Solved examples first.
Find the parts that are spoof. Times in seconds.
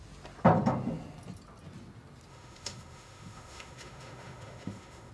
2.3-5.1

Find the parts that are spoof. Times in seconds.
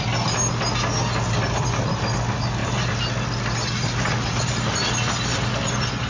none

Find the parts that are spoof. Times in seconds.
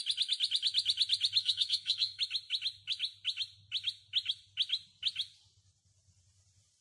1.4-2.2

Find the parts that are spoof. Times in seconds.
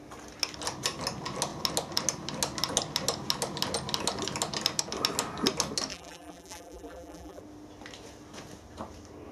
5.9-7.4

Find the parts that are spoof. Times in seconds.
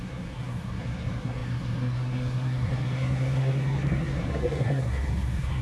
0.0-5.6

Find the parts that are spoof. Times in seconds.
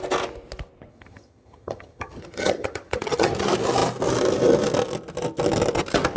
0.9-3.3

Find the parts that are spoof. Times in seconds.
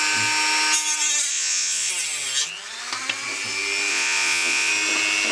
1.3-1.9; 3.9-4.7